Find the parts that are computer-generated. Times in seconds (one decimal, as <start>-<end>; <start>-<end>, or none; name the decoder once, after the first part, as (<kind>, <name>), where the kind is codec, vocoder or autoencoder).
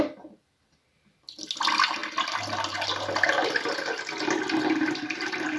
none